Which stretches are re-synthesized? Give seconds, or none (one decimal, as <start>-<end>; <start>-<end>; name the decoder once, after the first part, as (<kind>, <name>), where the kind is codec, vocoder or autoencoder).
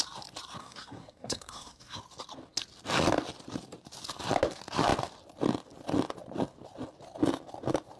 0.6-2.0 (codec, SNAC)